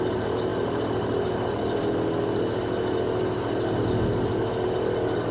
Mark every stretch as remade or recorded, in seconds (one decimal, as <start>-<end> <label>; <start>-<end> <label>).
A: 0.0-5.3 recorded